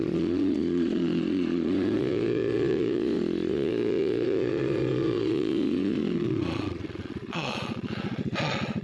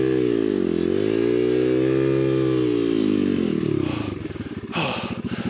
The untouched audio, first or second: second